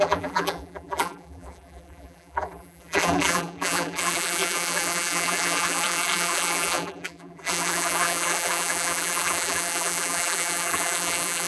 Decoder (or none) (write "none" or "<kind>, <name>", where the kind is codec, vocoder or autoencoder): vocoder, BigVGAN v2